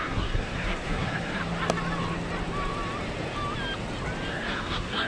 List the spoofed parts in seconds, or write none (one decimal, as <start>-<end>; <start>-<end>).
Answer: 0.0-1.4; 4.3-5.1